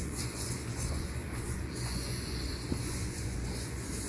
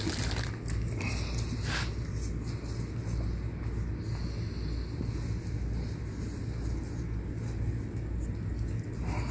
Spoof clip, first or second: first